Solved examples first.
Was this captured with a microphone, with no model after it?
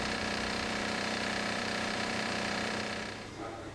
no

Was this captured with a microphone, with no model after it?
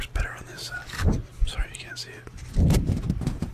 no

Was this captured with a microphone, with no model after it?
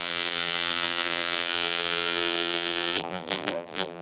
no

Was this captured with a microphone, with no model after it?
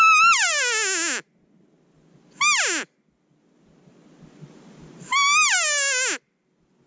yes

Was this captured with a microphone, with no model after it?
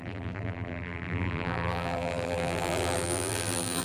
no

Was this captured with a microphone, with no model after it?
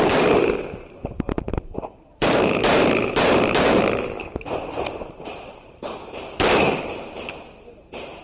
no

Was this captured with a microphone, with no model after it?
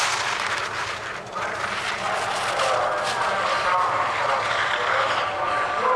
yes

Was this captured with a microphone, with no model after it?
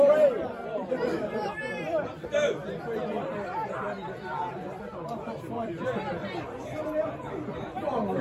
no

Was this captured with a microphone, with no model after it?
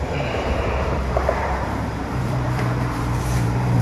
no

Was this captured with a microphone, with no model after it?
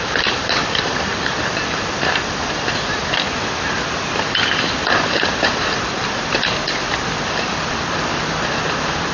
no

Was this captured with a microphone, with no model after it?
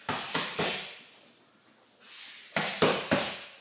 yes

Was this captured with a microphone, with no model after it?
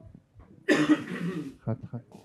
yes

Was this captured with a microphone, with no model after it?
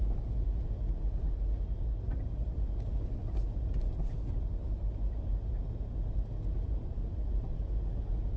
yes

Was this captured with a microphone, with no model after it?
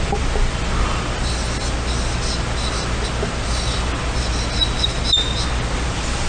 yes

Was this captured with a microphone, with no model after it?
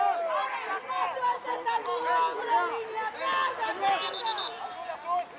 yes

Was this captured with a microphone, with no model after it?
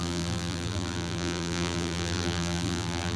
no